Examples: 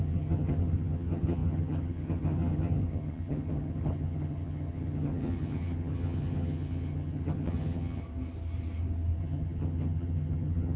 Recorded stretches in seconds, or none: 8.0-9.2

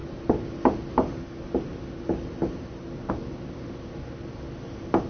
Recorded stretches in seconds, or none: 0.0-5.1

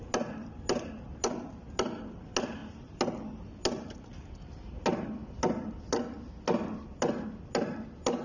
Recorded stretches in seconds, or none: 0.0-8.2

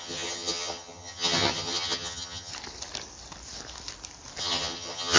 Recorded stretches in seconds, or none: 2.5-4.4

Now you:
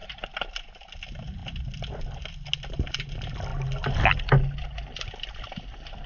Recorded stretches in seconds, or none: 0.0-6.1

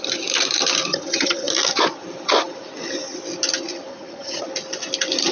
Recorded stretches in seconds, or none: 0.0-0.9; 1.5-3.9; 4.4-5.3

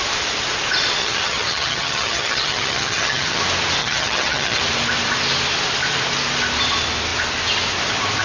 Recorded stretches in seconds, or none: 0.0-1.0; 3.4-3.8; 4.6-8.2